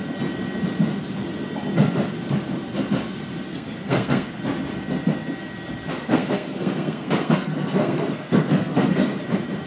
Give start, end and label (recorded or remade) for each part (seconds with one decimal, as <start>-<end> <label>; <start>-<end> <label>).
0.0-3.5 recorded; 3.5-4.4 remade; 4.4-6.0 recorded; 6.0-9.2 remade; 9.2-9.7 recorded